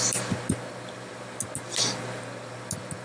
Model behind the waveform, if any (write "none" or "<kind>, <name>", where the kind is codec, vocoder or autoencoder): none